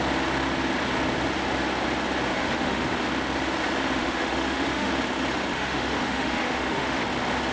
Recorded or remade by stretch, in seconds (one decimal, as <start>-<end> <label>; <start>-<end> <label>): 0.0-2.3 recorded; 2.3-2.9 remade; 2.9-4.0 recorded; 4.0-4.9 remade; 4.9-5.5 recorded; 5.5-7.0 remade; 7.0-7.5 recorded